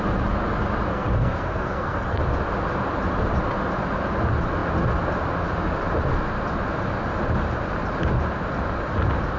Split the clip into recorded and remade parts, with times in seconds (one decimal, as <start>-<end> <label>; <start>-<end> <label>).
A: 0.0-0.9 recorded; 0.9-2.2 remade; 2.2-9.4 recorded